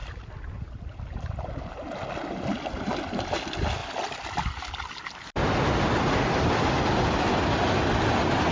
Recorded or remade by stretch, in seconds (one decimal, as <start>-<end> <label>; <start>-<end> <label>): 0.0-8.5 recorded